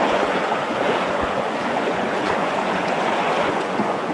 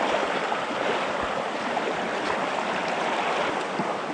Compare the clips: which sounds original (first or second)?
second